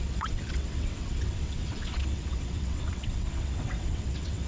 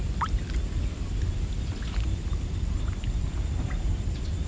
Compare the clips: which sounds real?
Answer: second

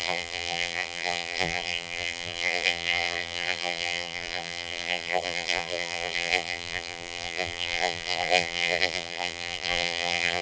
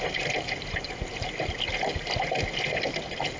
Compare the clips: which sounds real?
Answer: second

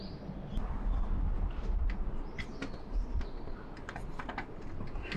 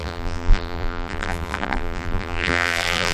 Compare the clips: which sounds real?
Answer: first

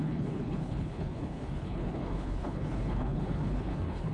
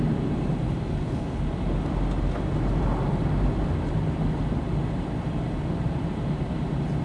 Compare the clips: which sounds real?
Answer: second